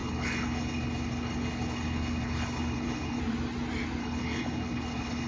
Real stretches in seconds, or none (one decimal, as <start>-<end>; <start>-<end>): 3.2-4.0